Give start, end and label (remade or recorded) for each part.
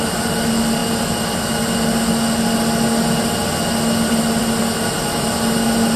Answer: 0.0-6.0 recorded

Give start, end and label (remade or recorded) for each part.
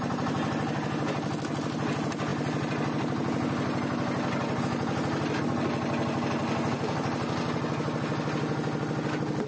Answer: 0.0-9.5 recorded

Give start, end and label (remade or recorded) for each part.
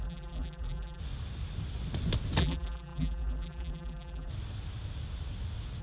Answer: 0.0-1.0 remade; 1.0-2.4 recorded; 2.4-4.3 remade; 4.3-5.8 recorded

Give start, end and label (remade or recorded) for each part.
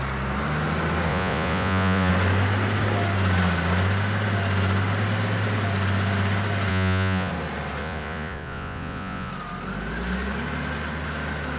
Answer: 0.0-1.1 recorded; 1.1-2.1 remade; 2.1-6.7 recorded; 6.7-7.3 remade; 7.3-7.8 recorded; 7.8-9.3 remade; 9.3-11.6 recorded